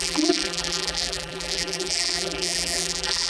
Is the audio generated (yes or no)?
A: yes